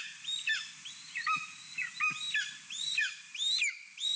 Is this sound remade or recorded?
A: recorded